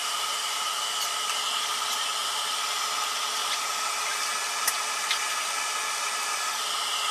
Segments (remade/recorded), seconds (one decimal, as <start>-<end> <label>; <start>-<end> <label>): 0.0-0.7 remade; 0.7-2.2 recorded; 2.2-2.9 remade; 2.9-3.4 recorded; 3.4-6.4 remade; 6.4-7.1 recorded